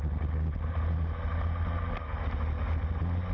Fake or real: real